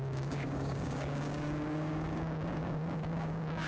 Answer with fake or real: fake